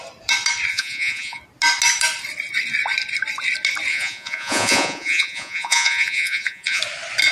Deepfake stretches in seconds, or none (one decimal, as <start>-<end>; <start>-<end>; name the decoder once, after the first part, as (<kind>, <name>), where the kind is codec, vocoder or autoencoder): 0.7-1.4 (vocoder, Vocos); 3.9-6.8

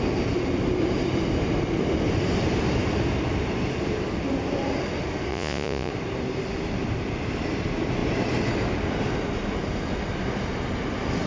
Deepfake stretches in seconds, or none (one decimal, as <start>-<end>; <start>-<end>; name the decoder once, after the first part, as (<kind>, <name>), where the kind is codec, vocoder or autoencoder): 5.3-5.9 (vocoder, Vocos)

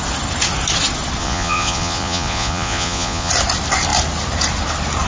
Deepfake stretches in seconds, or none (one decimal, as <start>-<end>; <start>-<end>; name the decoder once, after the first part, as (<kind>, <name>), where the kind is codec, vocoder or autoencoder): 1.2-3.3 (vocoder, Vocos)